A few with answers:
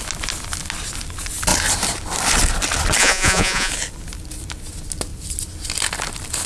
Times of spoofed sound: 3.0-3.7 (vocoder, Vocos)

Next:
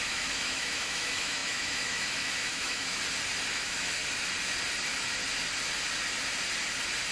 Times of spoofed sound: 0.0-3.0 (autoencoder, DAC-VAE); 3.5-4.0

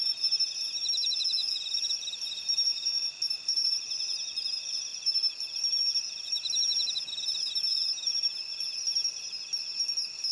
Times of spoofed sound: 1.4-3.7 (vocoder, BigVGAN v2); 4.9-5.6; 7.7-9.4

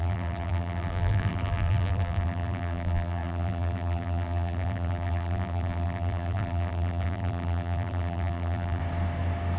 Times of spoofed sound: 0.0-8.8 (vocoder, BigVGAN v2)

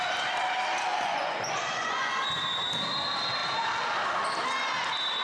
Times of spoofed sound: 0.9-2.2 (vocoder, Vocos)

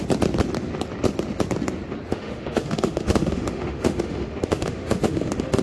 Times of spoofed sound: 2.1-5.6 (autoencoder, DAC-VAE)

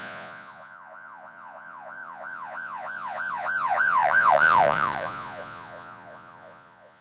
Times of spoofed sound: 0.0-7.0 (vocoder, Vocos)

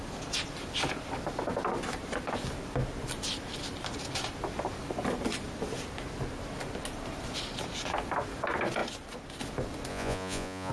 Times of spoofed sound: 9.9-10.7 (vocoder, Vocos)